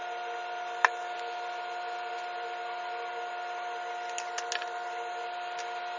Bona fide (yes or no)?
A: yes